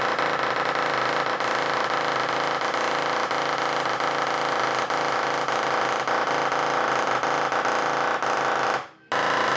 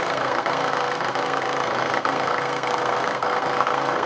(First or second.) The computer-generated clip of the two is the second